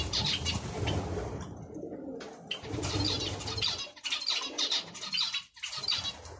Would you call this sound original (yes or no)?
yes